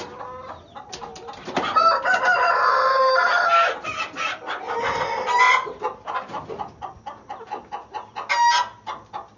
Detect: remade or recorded recorded